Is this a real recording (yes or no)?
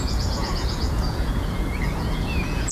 no